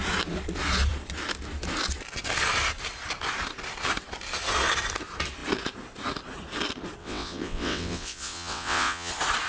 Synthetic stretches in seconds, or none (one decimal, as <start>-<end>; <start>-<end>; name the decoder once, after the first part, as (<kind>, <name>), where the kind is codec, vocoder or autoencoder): 7.0-9.1 (vocoder, WaveNeXt)